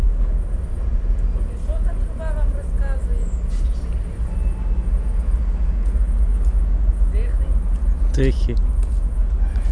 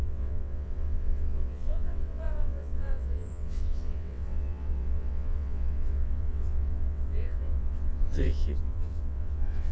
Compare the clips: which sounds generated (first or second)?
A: second